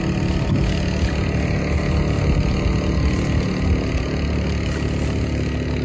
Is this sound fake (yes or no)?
no